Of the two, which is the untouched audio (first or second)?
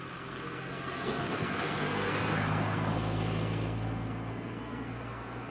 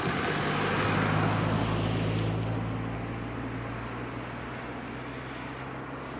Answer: second